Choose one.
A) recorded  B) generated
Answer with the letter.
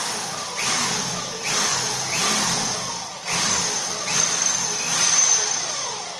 A